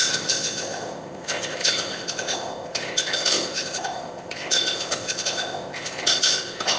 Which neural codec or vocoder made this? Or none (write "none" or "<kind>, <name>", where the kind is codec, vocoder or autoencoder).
codec, ZipCodec